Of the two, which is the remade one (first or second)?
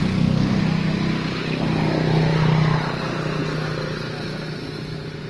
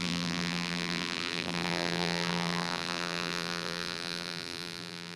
second